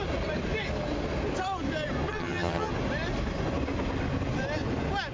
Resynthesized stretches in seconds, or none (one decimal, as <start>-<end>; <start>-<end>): 2.1-2.7